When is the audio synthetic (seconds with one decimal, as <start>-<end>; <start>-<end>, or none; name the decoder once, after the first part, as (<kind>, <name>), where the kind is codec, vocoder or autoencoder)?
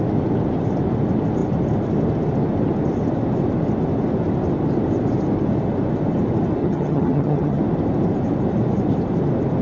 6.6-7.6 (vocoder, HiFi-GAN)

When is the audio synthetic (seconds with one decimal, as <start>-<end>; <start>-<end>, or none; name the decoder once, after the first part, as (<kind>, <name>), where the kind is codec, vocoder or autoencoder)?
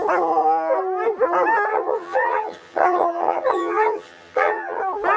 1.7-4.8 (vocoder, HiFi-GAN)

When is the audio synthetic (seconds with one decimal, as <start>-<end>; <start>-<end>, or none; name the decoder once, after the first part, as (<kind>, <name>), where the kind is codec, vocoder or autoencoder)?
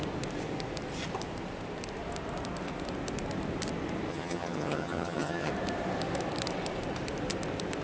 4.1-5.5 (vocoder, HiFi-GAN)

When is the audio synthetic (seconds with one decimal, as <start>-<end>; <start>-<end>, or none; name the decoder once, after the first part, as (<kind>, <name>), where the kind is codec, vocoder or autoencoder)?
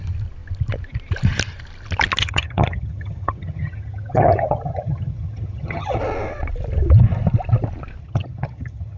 2.2-6.0 (vocoder, HiFi-GAN); 8.0-9.0